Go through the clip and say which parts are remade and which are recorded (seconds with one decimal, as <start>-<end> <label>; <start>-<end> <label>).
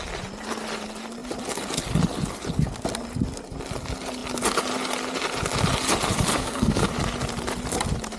0.0-6.3 recorded; 6.3-6.9 remade; 6.9-8.2 recorded